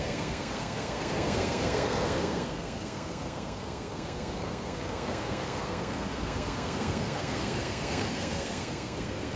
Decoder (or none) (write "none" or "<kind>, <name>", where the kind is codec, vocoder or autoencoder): codec, SNAC